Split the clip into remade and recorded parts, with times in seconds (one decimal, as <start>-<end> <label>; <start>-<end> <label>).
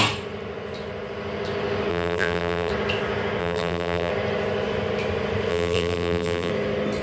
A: 0.0-1.9 recorded; 1.9-2.7 remade; 2.7-3.4 recorded; 3.4-4.1 remade; 4.1-5.5 recorded; 5.5-6.5 remade; 6.5-7.0 recorded